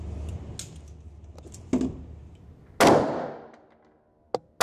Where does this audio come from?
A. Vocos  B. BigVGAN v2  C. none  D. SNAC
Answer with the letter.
C